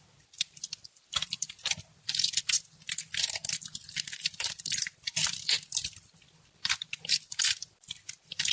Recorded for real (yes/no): no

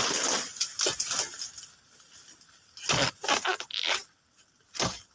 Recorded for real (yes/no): yes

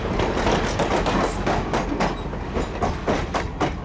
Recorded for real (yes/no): yes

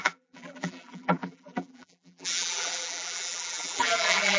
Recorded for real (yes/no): no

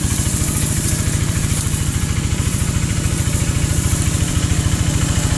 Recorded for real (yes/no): no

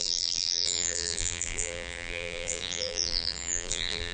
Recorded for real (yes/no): no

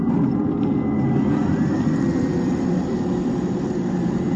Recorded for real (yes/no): no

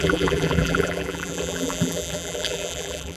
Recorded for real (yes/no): no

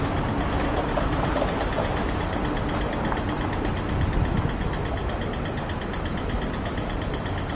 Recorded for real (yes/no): yes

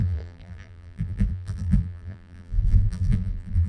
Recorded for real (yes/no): no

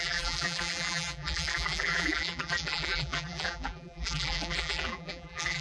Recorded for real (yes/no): no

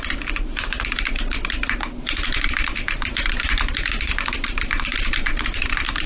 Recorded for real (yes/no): no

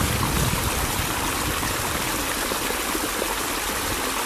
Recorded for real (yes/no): yes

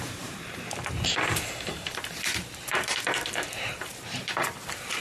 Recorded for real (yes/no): no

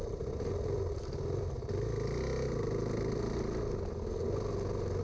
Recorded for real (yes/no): yes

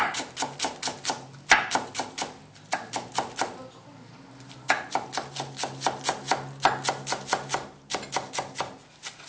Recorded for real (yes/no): yes